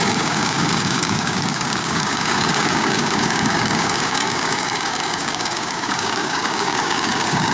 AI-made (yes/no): yes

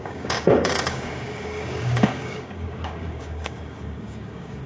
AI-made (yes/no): yes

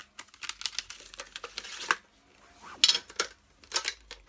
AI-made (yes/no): no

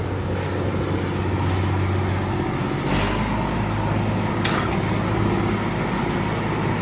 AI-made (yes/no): no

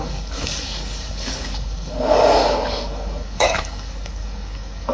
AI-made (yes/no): yes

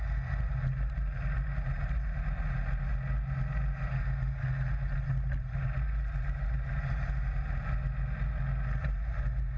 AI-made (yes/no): no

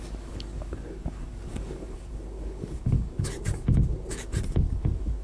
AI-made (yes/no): yes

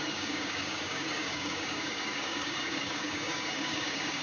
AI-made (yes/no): yes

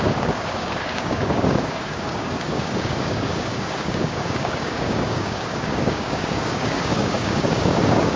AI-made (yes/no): yes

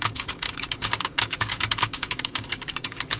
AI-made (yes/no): yes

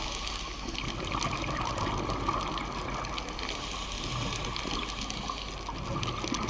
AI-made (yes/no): no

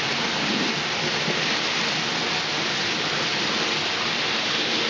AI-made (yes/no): no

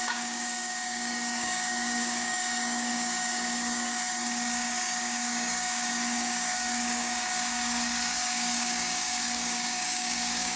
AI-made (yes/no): yes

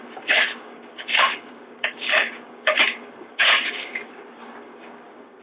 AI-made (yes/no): yes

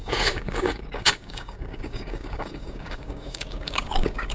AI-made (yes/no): yes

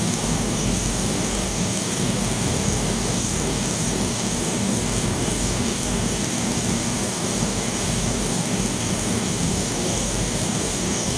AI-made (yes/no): yes